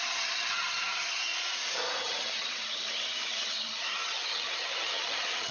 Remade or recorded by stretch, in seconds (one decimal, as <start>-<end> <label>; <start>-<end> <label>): 0.0-1.3 remade; 1.3-2.0 recorded; 2.0-5.5 remade